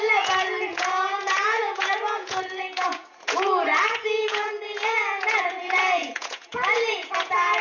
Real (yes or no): no